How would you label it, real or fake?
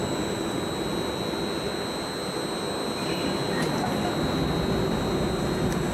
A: real